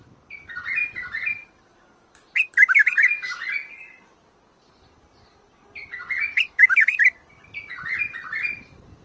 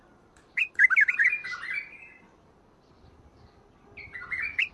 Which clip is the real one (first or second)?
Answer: first